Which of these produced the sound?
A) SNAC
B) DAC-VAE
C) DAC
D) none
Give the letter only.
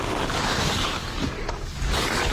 C